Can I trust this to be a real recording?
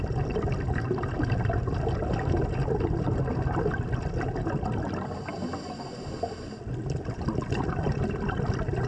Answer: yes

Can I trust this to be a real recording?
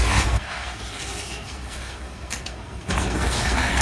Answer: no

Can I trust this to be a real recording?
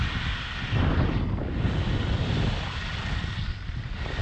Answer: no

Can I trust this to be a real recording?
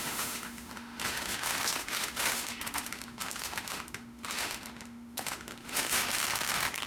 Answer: no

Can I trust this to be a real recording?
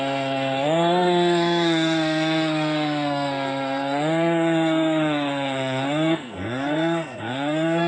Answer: no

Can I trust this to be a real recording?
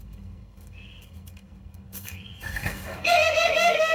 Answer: no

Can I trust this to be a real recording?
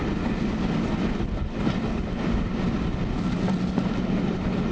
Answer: yes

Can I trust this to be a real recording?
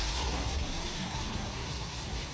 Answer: no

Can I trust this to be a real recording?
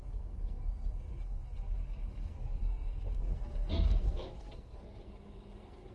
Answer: no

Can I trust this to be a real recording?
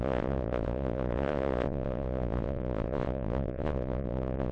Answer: no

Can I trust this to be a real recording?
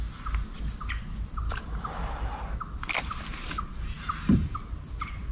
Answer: yes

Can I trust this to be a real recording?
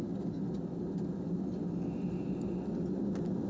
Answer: yes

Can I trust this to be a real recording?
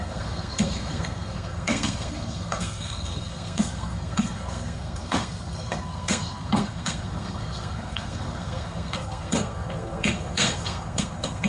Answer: no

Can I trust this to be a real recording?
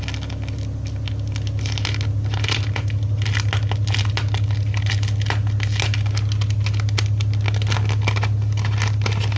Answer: yes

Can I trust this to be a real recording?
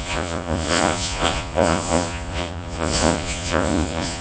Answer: no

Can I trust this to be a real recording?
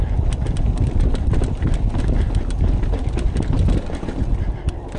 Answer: yes